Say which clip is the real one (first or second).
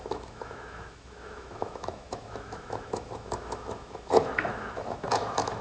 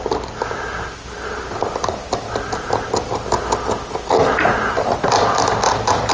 second